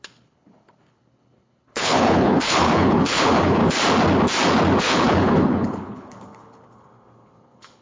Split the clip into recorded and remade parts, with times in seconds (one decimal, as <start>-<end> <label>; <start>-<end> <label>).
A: 0.0-3.6 remade; 3.6-4.8 recorded; 4.8-7.8 remade